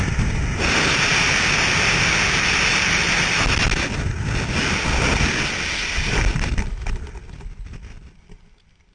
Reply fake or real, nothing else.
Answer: real